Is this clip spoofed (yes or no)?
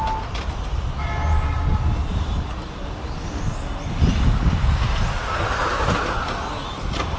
no